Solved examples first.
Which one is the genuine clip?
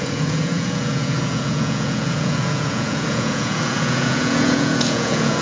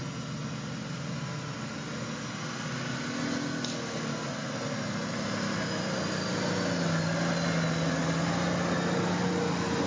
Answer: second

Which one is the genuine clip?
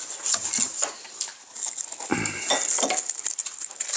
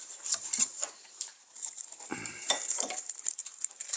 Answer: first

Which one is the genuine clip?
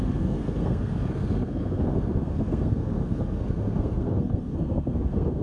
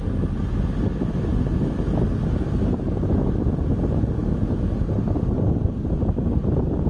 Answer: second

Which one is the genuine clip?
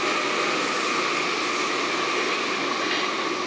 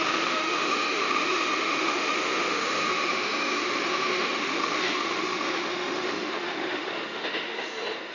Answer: first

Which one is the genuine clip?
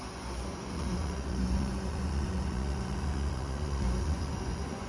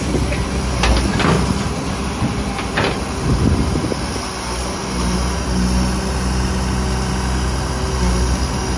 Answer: second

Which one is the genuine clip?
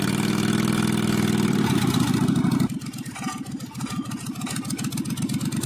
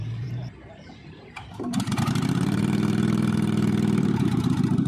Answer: first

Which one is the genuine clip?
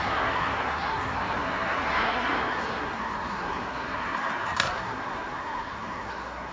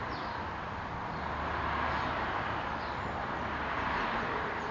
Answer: second